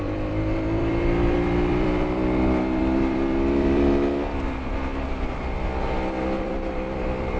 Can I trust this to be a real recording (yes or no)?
no